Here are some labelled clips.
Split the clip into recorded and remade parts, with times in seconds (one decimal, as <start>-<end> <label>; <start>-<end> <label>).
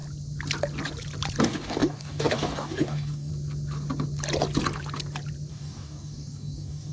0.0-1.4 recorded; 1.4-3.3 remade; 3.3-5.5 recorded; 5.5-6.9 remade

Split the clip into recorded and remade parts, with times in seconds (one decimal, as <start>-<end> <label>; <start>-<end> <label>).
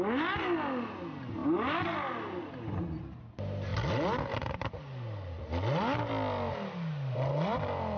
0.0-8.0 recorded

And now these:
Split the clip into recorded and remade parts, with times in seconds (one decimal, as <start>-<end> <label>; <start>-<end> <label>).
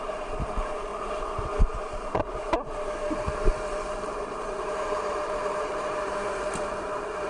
0.0-0.9 remade; 0.9-1.5 recorded; 1.5-7.3 remade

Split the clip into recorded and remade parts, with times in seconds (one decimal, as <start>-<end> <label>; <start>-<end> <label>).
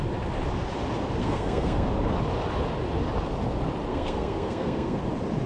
0.0-1.2 recorded; 1.2-1.9 remade; 1.9-3.9 recorded; 3.9-5.0 remade; 5.0-5.5 recorded